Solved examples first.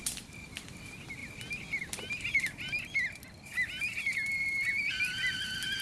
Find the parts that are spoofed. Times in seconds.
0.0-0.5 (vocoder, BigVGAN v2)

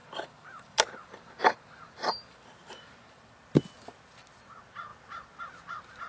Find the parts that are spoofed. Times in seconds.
0.0-3.3 (vocoder, BigVGAN v2)

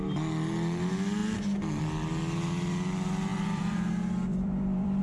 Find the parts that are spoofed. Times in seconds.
3.3-3.9 (vocoder, BigVGAN v2); 4.3-5.0

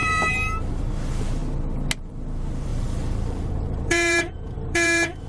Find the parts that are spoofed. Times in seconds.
0.0-1.4 (vocoder, BigVGAN v2); 2.0-5.3

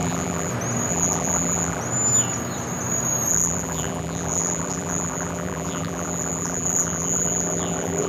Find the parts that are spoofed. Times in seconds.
0.0-0.5 (vocoder, BigVGAN v2); 0.9-1.8; 3.3-8.1

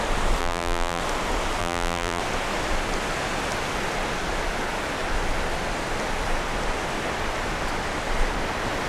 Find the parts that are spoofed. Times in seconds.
0.4-1.0 (vocoder, BigVGAN v2); 1.6-2.2